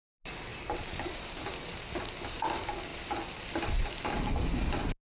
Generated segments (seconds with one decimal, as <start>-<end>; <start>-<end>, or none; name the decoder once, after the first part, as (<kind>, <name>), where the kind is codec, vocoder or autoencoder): 0.5-1.5 (vocoder, BigVGAN v2)